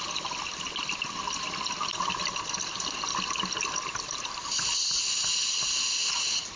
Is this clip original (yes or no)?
yes